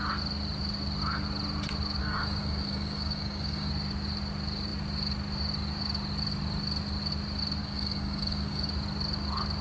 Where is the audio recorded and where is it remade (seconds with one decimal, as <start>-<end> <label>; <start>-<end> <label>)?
0.0-2.0 recorded; 2.0-3.7 remade; 3.7-7.6 recorded; 7.6-8.7 remade; 8.7-9.6 recorded